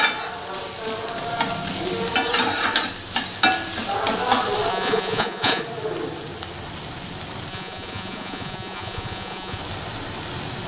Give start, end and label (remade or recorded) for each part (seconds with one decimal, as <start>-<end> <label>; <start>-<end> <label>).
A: 0.0-4.7 recorded; 4.7-5.6 remade; 5.6-7.5 recorded; 7.5-9.6 remade; 9.6-10.7 recorded